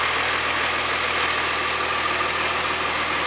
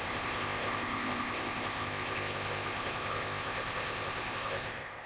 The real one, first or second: first